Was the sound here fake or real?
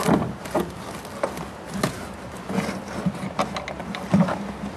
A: real